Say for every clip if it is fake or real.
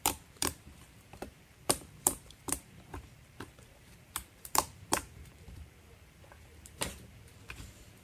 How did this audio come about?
fake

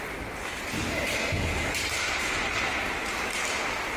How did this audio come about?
real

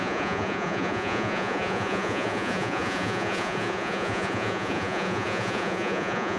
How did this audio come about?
fake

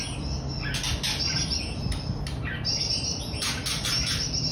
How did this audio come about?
real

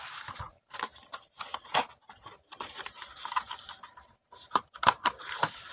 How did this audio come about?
fake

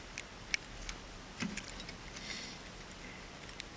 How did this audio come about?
real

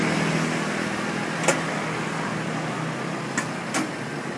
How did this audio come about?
real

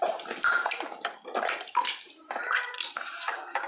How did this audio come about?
fake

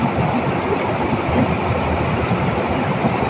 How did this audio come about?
real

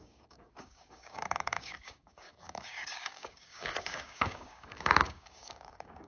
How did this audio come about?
fake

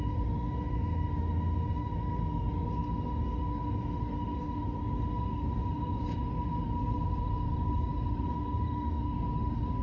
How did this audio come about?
fake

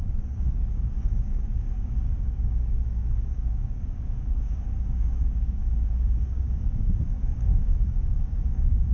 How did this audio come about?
fake